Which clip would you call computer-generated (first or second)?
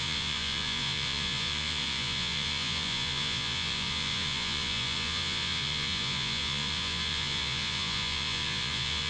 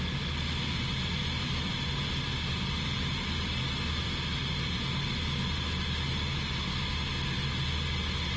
first